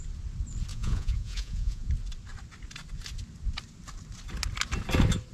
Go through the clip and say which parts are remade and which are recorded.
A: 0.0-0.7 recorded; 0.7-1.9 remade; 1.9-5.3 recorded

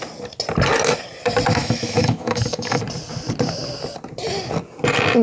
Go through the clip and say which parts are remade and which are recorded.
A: 0.0-1.6 recorded; 1.6-2.8 remade; 2.8-5.2 recorded

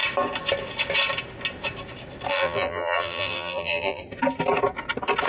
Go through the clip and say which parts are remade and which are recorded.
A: 0.0-2.3 recorded; 2.3-4.0 remade; 4.0-5.3 recorded

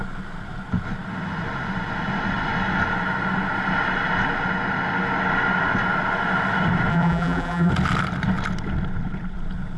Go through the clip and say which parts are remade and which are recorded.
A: 0.0-6.9 recorded; 6.9-7.7 remade; 7.7-9.8 recorded